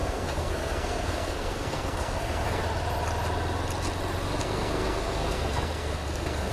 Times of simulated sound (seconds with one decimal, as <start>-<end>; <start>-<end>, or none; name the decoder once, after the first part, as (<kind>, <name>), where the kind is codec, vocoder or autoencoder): 0.0-2.6 (codec, SNAC); 4.4-6.5